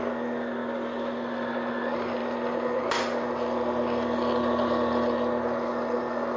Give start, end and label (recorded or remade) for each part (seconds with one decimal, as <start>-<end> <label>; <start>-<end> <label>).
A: 0.0-6.4 recorded